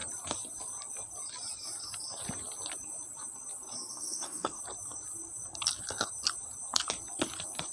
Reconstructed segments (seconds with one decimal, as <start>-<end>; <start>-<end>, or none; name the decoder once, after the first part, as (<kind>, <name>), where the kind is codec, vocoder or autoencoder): 3.9-4.6 (codec, SNAC)